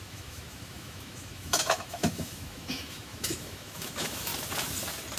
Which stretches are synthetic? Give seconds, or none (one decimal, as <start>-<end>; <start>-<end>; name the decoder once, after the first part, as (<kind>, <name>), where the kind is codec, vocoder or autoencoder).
0.0-4.3 (autoencoder, DAC-VAE)